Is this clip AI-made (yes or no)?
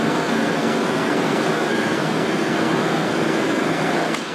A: yes